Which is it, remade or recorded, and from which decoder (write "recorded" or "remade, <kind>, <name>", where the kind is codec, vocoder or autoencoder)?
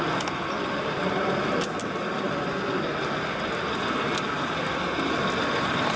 recorded